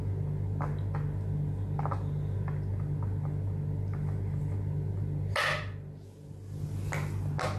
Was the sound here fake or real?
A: real